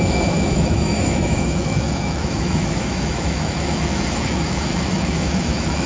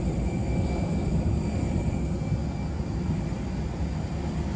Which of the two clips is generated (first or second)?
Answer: first